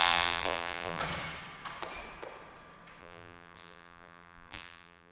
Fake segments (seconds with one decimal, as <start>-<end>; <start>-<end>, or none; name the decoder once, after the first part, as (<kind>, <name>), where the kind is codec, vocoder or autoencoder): 0.0-1.0 (vocoder, BigVGAN v2); 3.0-5.1